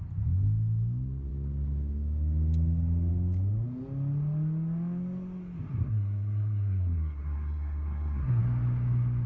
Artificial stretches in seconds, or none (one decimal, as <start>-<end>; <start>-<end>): 5.8-8.4

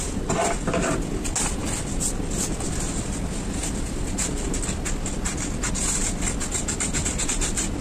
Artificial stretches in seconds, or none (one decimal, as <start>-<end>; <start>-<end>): none